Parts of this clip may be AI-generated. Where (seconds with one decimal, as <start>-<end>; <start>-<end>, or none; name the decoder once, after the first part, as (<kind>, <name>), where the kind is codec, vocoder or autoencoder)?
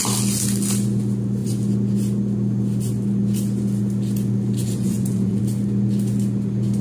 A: 4.6-5.4 (vocoder, Vocos)